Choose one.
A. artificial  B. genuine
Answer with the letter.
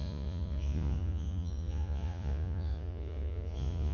A